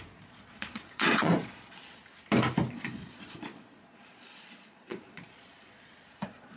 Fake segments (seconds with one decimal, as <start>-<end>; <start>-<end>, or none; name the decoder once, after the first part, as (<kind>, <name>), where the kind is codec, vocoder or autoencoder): 0.0-2.0 (vocoder, Vocos); 2.7-6.6